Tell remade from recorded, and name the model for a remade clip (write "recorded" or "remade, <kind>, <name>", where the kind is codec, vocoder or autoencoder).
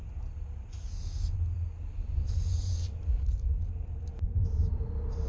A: recorded